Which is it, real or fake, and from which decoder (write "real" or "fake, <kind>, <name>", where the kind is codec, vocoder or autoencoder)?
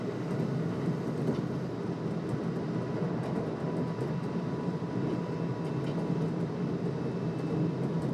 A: real